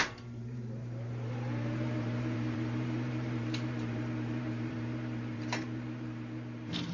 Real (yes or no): no